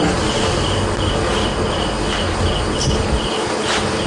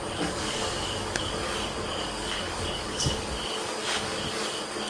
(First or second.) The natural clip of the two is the first